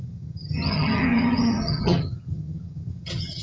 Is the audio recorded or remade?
remade